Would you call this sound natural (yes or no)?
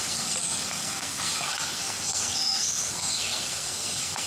no